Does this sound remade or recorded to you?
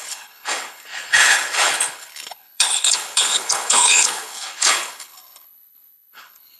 remade